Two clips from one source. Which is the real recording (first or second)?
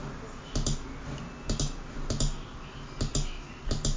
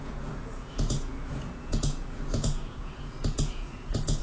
first